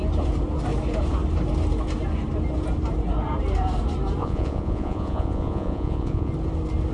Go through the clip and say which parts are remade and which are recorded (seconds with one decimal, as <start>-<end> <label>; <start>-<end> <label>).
0.0-4.2 recorded; 4.2-6.3 remade; 6.3-6.9 recorded

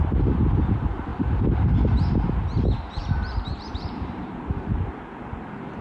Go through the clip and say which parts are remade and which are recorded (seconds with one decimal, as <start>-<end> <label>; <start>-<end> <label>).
0.0-1.1 recorded; 1.1-1.8 remade; 1.8-3.0 recorded; 3.0-4.8 remade; 4.8-5.8 recorded